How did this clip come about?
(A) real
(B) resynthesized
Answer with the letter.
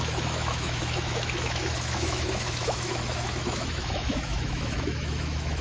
B